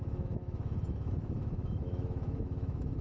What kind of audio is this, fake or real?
fake